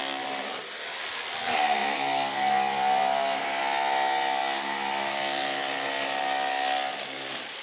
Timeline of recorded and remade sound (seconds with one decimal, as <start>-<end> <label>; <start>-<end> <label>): 0.0-1.8 recorded; 1.8-2.5 remade; 2.5-7.6 recorded